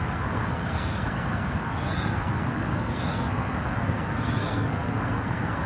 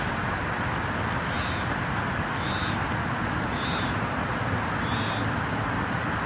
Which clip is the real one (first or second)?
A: second